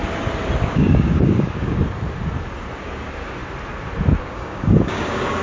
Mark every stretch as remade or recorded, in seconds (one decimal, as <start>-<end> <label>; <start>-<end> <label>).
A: 0.0-0.6 recorded; 0.6-1.8 remade; 1.8-2.8 recorded; 2.8-3.4 remade; 3.4-4.2 recorded; 4.2-5.4 remade